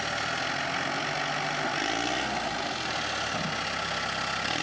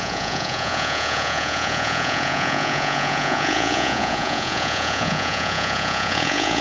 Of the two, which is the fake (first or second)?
second